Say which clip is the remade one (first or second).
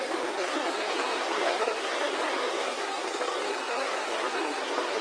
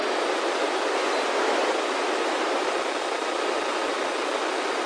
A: first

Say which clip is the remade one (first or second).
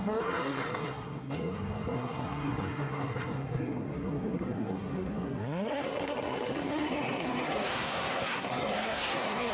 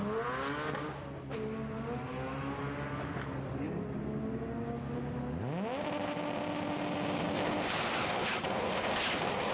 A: first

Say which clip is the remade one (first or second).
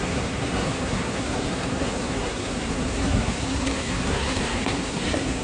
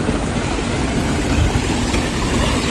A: first